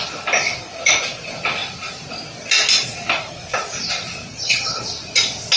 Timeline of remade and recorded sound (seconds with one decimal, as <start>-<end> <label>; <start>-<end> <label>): 0.0-4.3 recorded; 4.3-4.8 remade; 4.8-5.6 recorded